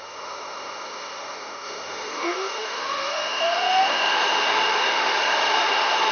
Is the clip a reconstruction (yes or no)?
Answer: yes